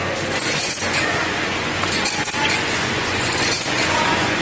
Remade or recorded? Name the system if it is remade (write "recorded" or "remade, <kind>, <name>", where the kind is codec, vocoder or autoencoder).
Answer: remade, vocoder, Vocos